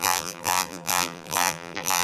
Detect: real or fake fake